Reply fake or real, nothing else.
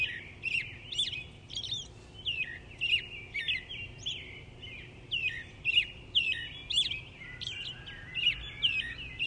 real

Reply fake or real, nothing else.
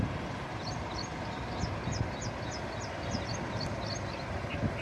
real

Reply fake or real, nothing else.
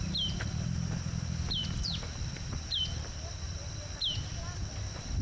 real